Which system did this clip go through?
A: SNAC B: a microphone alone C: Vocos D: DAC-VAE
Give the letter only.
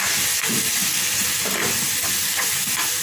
B